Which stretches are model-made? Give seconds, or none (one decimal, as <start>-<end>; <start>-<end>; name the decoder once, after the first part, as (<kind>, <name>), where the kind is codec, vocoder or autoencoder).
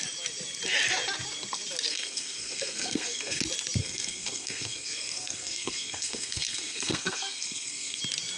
1.9-3.4 (codec, SNAC); 3.8-8.0